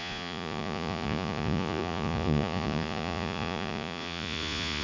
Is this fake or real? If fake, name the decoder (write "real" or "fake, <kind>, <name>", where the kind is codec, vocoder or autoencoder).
fake, vocoder, Vocos